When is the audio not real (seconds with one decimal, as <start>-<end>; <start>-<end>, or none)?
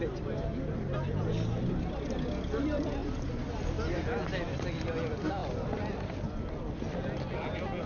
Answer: none